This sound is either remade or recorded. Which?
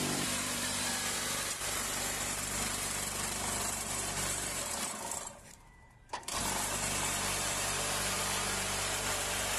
remade